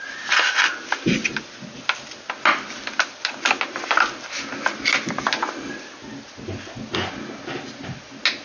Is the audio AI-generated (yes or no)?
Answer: no